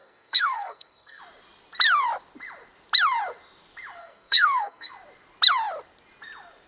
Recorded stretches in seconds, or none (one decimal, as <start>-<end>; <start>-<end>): 1.2-4.0; 4.9-6.7